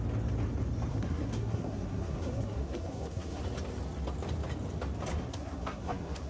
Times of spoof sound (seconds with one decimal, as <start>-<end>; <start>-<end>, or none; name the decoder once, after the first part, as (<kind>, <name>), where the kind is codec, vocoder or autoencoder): 0.9-3.4 (codec, SNAC); 5.1-6.3

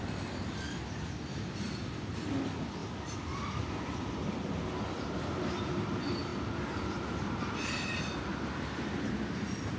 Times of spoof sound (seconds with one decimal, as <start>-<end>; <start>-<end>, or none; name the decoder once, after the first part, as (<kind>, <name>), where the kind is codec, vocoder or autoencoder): none

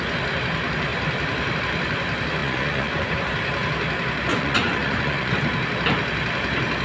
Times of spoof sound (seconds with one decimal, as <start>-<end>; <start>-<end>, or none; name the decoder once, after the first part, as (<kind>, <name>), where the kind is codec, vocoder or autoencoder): 2.4-3.1 (vocoder, Vocos); 4.3-5.3

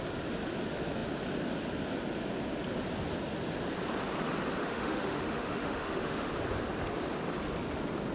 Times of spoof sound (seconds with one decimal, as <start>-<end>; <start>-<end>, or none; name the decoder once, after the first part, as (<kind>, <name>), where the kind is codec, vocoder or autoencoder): 4.6-6.3 (autoencoder, DAC-VAE)

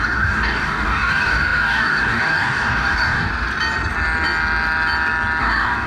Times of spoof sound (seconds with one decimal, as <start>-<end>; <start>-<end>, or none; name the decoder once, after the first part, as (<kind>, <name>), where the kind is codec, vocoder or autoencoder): 0.0-3.3 (codec, DAC); 5.4-5.9

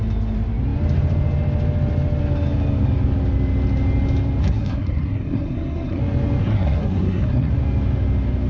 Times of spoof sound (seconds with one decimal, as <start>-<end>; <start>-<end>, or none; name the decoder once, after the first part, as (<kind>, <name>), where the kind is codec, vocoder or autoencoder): 4.4-6.0 (codec, SNAC); 6.4-7.5

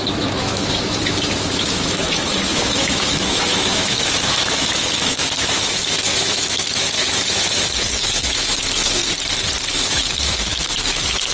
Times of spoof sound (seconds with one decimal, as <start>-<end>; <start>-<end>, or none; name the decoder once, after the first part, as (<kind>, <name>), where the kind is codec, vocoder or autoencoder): 0.0-9.0 (autoencoder, DAC-VAE); 9.7-11.3